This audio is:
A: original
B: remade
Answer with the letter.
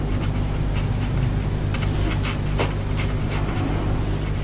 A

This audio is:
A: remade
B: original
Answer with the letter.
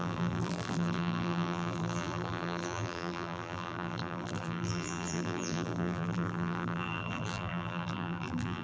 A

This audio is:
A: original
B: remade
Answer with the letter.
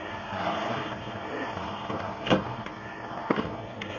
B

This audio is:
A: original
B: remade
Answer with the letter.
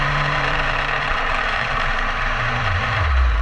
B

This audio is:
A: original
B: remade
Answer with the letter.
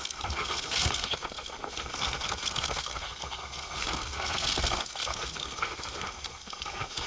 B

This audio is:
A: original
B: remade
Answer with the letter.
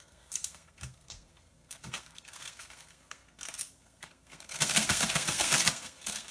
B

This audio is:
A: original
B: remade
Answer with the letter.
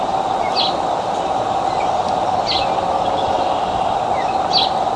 A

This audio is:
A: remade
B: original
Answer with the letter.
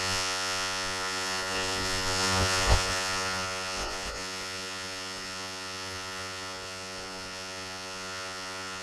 A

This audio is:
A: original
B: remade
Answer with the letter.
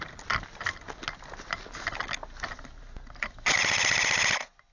A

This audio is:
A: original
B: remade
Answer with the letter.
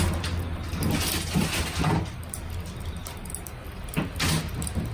A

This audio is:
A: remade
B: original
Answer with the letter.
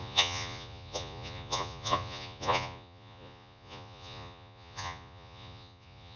A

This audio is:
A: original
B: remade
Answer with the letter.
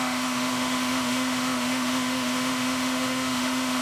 B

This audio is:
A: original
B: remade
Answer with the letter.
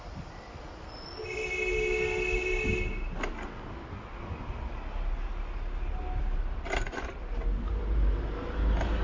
A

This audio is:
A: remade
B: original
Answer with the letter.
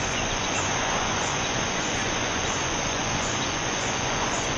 A